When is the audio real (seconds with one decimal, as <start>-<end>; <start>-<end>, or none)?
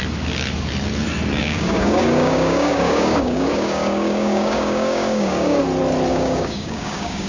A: 0.0-1.4; 5.6-6.1